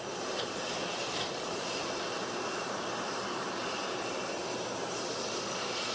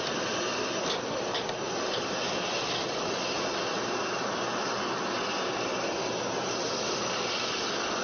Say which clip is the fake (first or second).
first